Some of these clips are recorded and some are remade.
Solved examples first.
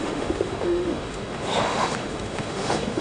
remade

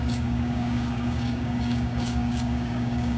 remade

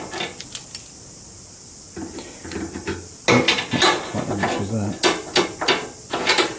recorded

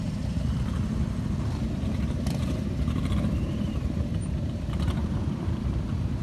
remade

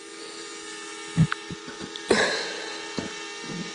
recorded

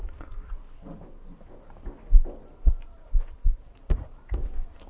recorded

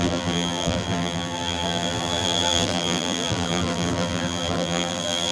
remade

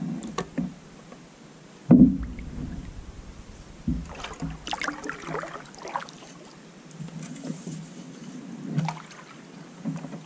recorded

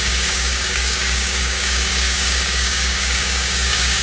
remade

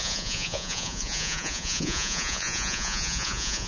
remade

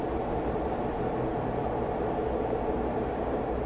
remade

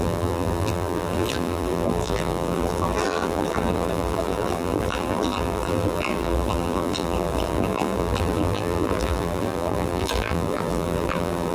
remade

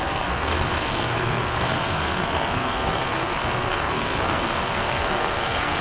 remade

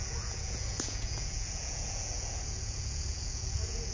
remade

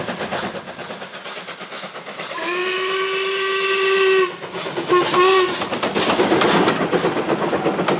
recorded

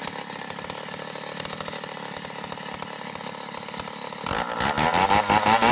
recorded